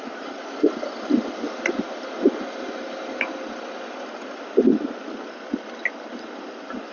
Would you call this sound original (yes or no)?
yes